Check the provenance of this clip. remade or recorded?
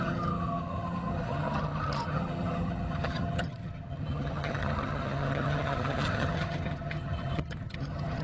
remade